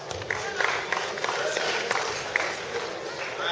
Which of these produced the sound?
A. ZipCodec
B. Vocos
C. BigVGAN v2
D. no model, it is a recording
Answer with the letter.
D